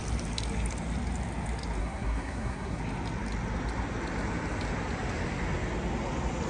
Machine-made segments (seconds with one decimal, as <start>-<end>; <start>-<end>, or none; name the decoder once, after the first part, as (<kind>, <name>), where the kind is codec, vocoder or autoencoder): 1.8-2.8 (codec, SNAC)